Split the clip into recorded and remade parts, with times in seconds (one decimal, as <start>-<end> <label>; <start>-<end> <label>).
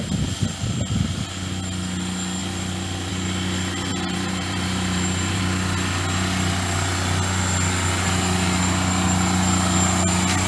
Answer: 0.0-3.9 recorded; 3.9-5.4 remade; 5.4-10.5 recorded